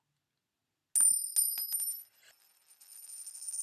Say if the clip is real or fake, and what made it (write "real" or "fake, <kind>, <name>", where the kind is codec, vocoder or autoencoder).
real